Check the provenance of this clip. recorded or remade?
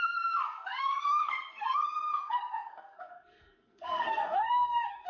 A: remade